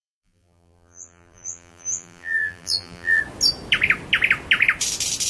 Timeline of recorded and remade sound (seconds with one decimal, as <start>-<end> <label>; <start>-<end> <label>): 0.0-3.2 remade; 3.2-5.3 recorded